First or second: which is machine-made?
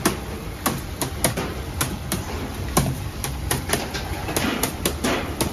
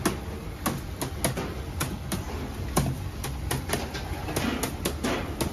first